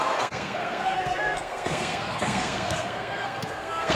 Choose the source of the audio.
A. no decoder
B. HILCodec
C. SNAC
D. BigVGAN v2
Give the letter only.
C